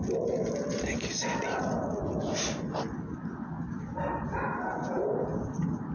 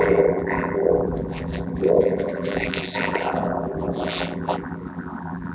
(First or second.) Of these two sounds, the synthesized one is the second